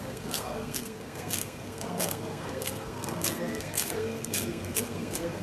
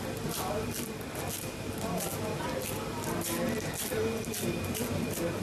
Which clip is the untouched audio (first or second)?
second